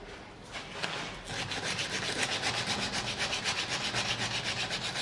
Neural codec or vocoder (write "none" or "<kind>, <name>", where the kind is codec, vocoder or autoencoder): none